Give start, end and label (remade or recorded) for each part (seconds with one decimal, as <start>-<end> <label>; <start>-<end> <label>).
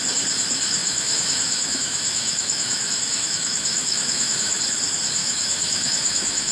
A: 0.0-0.8 recorded; 0.8-4.6 remade; 4.6-5.2 recorded; 5.2-6.5 remade